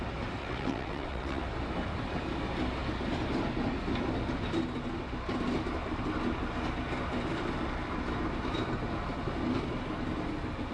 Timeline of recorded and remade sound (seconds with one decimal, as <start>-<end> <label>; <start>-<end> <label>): 0.0-0.4 recorded; 0.4-1.4 remade; 1.4-10.7 recorded